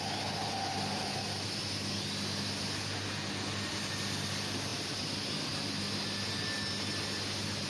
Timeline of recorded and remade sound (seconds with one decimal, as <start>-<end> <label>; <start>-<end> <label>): 0.0-7.7 recorded